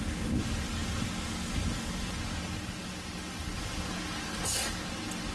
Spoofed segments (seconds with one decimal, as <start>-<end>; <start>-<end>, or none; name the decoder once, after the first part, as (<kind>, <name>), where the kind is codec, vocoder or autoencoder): none